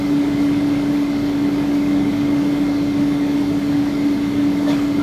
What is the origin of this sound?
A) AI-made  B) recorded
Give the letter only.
A